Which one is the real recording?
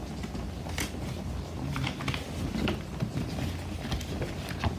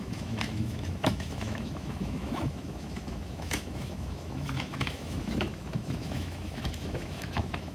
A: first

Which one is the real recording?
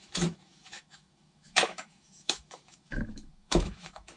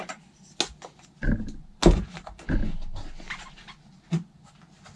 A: second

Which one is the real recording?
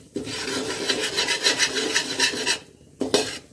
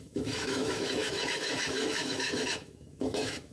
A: first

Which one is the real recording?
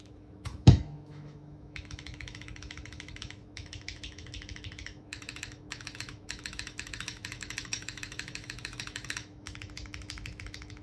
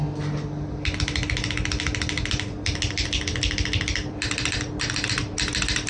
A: second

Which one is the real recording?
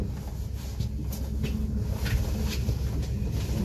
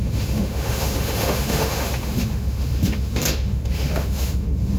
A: first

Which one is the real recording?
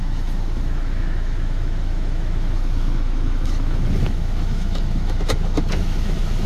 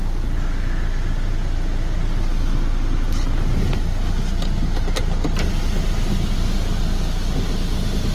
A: second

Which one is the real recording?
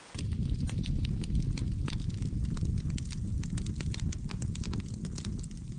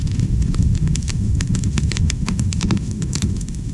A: first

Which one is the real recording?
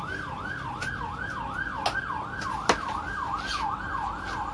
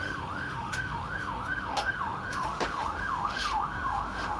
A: first